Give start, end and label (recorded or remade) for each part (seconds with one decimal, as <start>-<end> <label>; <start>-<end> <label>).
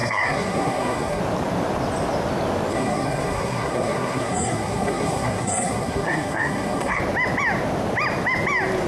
0.0-1.2 remade; 1.2-2.7 recorded; 2.7-7.0 remade; 7.0-8.9 recorded